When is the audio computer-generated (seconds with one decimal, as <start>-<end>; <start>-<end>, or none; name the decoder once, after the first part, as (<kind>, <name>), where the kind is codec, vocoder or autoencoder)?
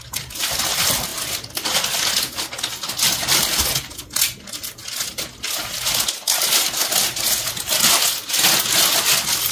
1.1-1.9 (vocoder, BigVGAN v2)